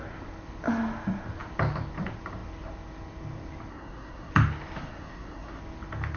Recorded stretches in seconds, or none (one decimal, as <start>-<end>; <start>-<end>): 0.0-3.7; 4.3-4.8; 5.6-6.2